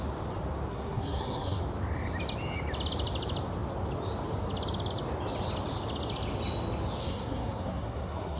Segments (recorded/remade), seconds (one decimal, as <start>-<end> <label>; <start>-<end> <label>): 0.0-0.7 recorded; 0.7-1.6 remade; 1.6-7.0 recorded; 7.0-8.4 remade